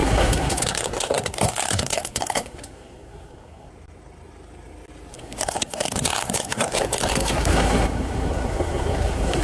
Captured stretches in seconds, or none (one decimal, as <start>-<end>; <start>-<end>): 3.7-5.1